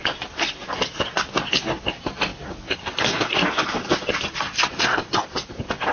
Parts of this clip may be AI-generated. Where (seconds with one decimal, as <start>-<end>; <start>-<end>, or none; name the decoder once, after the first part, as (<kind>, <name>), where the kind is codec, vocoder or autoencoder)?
none